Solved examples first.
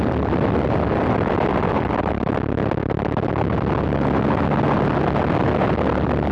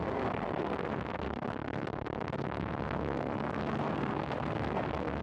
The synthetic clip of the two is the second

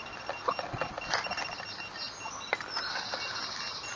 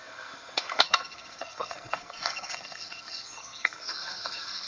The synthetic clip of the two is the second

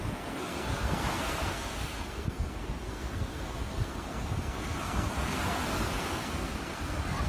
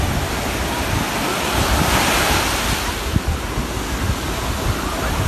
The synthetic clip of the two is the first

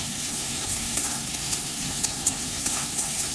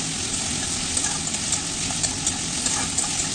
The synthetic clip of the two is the first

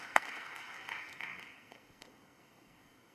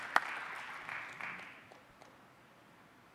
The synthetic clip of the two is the first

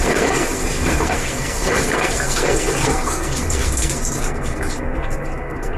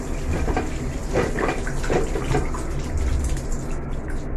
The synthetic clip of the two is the first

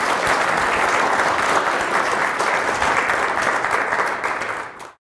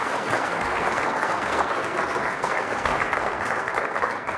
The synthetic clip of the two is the second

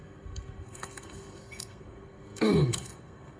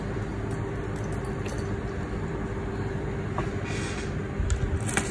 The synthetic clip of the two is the first